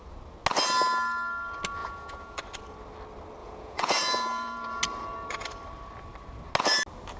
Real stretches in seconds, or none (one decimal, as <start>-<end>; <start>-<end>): 0.0-1.8; 2.4-3.4; 4.8-7.2